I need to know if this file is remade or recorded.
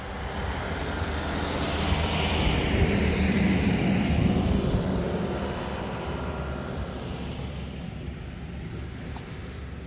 remade